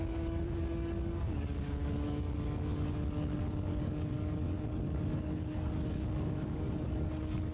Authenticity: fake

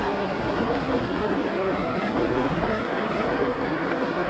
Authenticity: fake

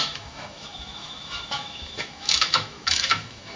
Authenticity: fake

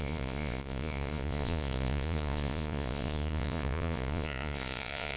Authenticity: fake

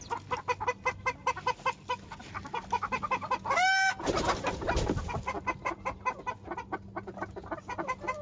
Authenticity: real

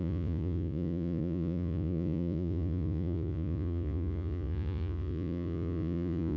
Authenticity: fake